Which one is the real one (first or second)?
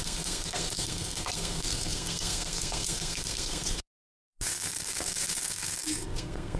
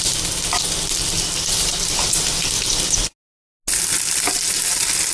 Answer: second